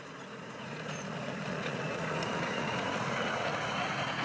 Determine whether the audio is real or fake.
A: fake